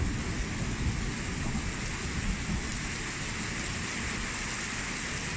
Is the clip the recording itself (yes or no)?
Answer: yes